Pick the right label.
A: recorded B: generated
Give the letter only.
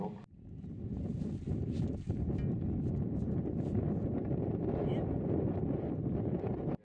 A